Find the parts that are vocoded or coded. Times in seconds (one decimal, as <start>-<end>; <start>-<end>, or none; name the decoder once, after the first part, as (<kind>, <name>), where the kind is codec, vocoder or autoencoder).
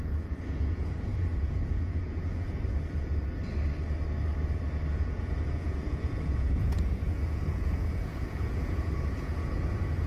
0.0-3.4 (vocoder, Vocos); 4.9-10.1